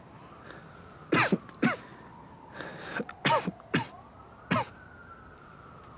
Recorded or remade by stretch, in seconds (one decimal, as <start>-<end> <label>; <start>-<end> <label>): 0.0-6.0 recorded

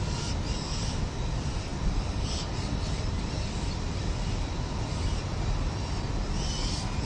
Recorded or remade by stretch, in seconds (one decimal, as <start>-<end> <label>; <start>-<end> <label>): 0.0-7.0 recorded

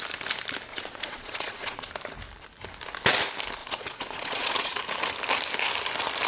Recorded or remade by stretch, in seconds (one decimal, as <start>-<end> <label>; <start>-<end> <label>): 0.0-0.7 recorded; 0.7-1.9 remade; 1.9-3.6 recorded; 3.6-4.8 remade; 4.8-6.3 recorded

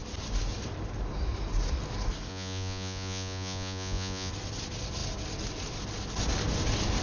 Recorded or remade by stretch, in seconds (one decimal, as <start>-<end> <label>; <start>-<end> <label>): 0.0-2.3 recorded; 2.3-4.3 remade; 4.3-7.0 recorded

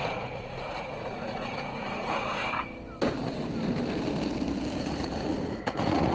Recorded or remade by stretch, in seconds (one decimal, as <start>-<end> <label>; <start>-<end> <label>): 0.0-2.4 remade; 2.4-4.8 recorded; 4.8-6.1 remade

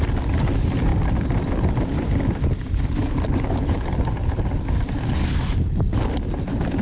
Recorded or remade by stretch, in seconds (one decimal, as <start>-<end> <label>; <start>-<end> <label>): 0.0-6.8 recorded

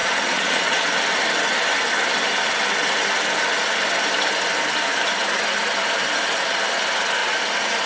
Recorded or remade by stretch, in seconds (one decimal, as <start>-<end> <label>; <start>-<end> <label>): 0.0-0.9 remade; 0.9-7.9 recorded

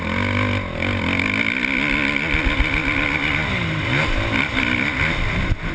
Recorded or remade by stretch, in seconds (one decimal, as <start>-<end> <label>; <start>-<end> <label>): 0.0-5.7 recorded